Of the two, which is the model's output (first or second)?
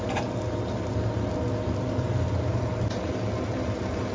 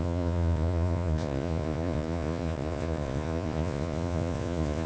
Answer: second